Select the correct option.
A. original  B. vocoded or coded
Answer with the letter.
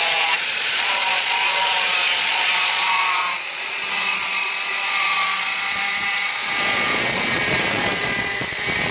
B